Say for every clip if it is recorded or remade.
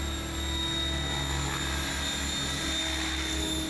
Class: recorded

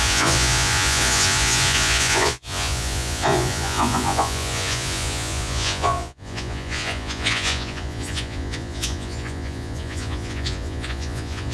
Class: remade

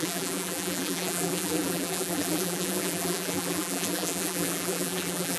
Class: remade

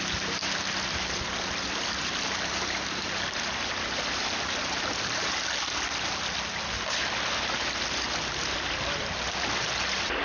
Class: recorded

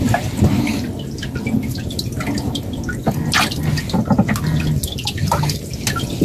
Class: recorded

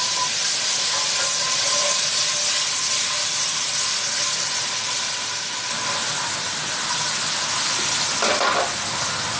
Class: recorded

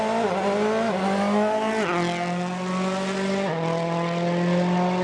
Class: recorded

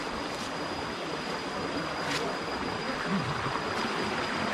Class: recorded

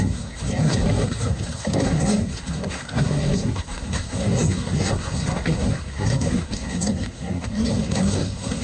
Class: remade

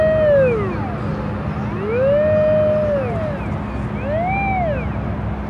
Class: recorded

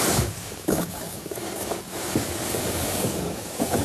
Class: remade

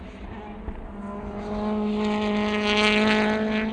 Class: recorded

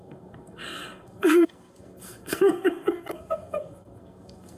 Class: remade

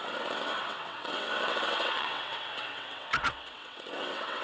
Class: remade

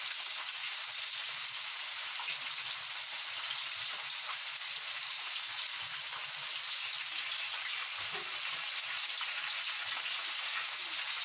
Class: recorded